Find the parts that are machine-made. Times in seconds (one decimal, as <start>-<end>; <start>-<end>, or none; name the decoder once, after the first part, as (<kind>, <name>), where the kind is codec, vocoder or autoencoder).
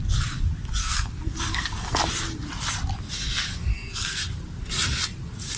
0.8-2.0 (codec, SNAC); 3.7-4.2